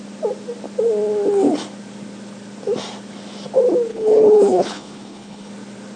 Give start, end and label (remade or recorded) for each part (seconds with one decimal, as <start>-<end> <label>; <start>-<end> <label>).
0.0-3.9 recorded; 3.9-5.5 remade; 5.5-6.0 recorded